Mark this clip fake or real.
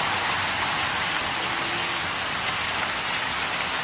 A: real